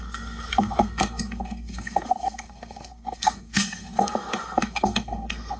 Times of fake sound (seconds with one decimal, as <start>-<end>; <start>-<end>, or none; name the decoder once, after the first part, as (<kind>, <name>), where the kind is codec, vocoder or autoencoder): 0.0-5.6 (codec, SNAC)